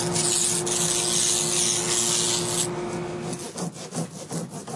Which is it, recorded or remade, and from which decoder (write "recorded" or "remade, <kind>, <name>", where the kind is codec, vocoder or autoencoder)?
recorded